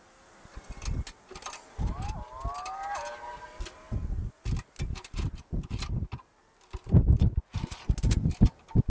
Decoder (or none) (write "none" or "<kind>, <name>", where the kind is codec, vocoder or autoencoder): none